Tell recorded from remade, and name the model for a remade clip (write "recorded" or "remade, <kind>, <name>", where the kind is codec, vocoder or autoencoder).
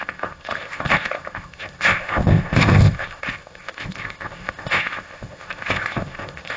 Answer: remade, codec, ZipCodec